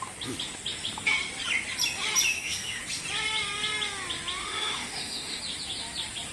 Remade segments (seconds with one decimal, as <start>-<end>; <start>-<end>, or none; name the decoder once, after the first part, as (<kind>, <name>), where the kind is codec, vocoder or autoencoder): 2.3-2.8 (autoencoder, DAC-VAE); 4.4-5.4